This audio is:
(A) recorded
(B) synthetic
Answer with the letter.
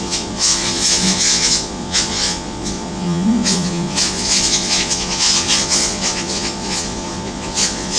B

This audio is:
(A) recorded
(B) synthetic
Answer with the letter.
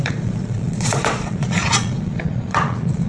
B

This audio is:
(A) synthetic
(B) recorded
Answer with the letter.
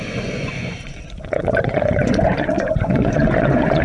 A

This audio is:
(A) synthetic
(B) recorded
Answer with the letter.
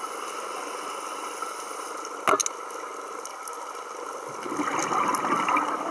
B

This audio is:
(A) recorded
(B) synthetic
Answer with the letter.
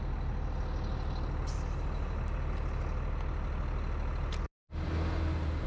A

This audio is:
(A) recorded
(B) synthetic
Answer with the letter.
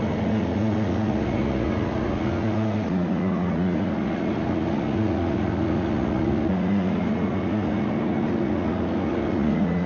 B